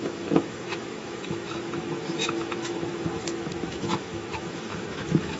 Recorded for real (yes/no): no